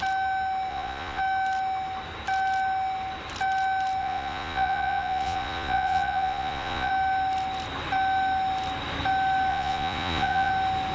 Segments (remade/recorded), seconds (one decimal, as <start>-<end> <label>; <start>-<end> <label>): 0.0-0.7 recorded; 0.7-1.2 remade; 1.2-4.0 recorded; 4.0-6.9 remade; 6.9-9.5 recorded; 9.5-10.5 remade; 10.5-10.9 recorded